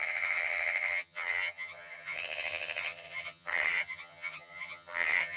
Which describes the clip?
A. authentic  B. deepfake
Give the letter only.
B